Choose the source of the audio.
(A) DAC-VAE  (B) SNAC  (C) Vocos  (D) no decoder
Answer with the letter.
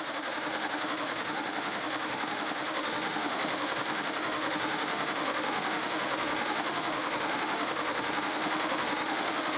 A